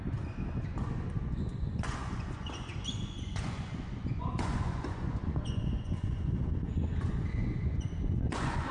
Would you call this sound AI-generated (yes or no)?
yes